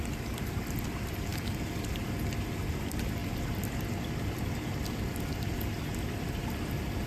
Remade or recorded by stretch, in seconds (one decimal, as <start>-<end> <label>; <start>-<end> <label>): 0.0-1.3 recorded; 1.3-1.8 remade; 1.8-7.1 recorded

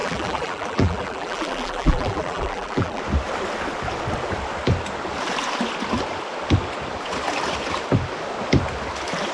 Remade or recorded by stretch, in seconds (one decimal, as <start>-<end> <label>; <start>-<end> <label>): 0.0-3.0 remade; 3.0-9.3 recorded

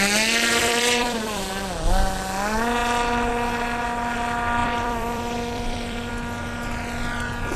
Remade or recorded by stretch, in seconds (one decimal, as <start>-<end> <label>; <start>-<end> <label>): 0.0-0.6 recorded; 0.6-1.5 remade; 1.5-4.6 recorded; 4.6-6.1 remade; 6.1-7.6 recorded